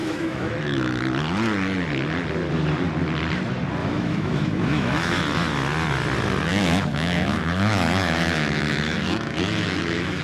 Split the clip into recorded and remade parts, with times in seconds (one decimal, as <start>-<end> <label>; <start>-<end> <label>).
0.0-1.0 remade; 1.0-3.8 recorded; 3.8-5.2 remade; 5.2-6.5 recorded; 6.5-10.2 remade

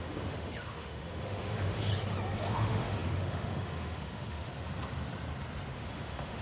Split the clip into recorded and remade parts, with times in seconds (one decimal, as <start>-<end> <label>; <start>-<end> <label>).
0.0-1.9 remade; 1.9-2.5 recorded; 2.5-4.5 remade; 4.5-5.7 recorded; 5.7-6.4 remade

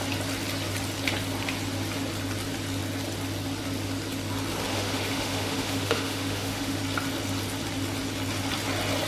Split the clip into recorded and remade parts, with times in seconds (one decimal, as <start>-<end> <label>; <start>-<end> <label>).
0.0-4.7 recorded; 4.7-6.8 remade; 6.8-9.1 recorded

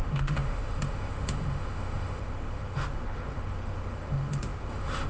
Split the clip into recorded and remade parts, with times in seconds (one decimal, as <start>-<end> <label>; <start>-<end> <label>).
0.0-5.1 remade

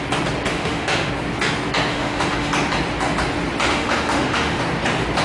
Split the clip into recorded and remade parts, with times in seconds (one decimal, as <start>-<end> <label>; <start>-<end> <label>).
0.0-0.5 recorded; 0.5-1.1 remade; 1.1-1.9 recorded; 1.9-2.5 remade; 2.5-3.7 recorded; 3.7-4.6 remade; 4.6-5.2 recorded

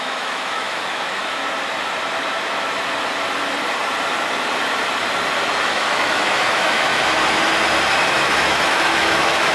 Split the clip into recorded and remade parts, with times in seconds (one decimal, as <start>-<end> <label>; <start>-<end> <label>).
0.0-1.4 remade; 1.4-5.6 recorded; 5.6-6.9 remade; 6.9-8.1 recorded; 8.1-9.5 remade

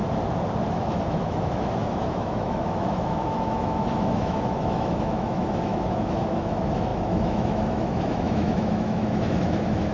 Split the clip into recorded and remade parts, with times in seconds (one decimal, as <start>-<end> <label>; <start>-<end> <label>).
0.0-0.7 recorded; 0.7-9.9 remade